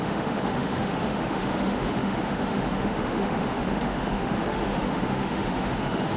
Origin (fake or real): fake